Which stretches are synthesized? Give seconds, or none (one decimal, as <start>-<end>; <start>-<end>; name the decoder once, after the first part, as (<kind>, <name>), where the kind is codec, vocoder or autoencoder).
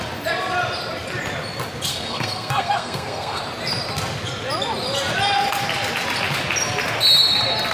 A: 1.9-3.4 (codec, SNAC)